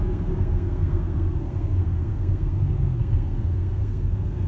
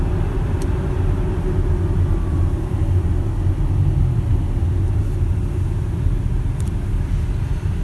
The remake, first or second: first